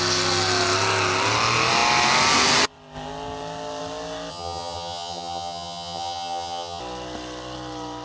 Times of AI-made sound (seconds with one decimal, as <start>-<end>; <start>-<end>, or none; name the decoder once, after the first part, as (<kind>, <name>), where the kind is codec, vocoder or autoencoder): 4.3-6.8 (vocoder, HiFi-GAN)